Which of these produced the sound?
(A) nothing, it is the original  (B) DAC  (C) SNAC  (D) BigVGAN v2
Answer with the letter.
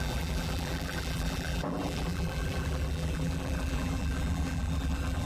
D